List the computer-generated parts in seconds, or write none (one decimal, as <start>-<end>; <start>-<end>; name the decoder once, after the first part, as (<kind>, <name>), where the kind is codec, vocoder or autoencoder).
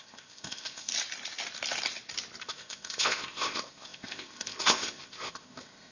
0.0-0.9 (codec, ZipCodec); 2.4-5.9